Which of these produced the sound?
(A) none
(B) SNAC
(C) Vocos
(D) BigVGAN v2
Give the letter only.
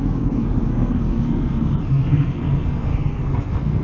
B